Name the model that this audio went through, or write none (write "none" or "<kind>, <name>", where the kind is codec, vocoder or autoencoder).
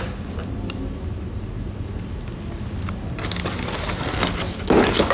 none